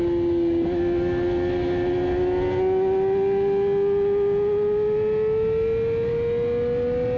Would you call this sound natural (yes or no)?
yes